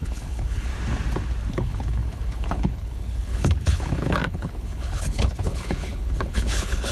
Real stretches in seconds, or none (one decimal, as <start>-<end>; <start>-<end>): 0.7-1.5